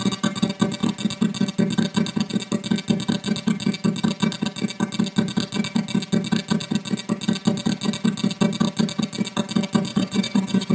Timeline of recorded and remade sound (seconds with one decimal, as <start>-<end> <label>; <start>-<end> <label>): 0.0-9.9 recorded; 9.9-10.7 remade